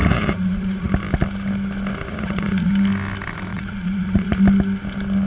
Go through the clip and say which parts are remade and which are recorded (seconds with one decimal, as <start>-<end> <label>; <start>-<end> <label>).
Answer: 0.0-0.9 remade; 0.9-2.1 recorded; 2.1-2.7 remade; 2.7-3.5 recorded; 3.5-4.4 remade; 4.4-5.3 recorded